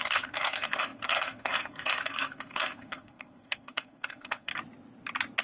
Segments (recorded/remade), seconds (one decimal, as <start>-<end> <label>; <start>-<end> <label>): 0.0-4.5 remade; 4.5-5.4 recorded